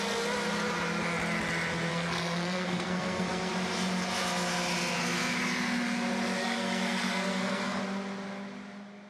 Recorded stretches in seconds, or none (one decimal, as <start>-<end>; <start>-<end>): 0.0-1.9; 3.5-6.4; 7.8-9.1